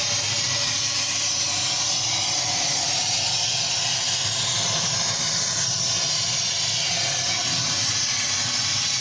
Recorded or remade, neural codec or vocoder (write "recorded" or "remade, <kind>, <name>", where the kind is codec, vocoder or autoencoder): recorded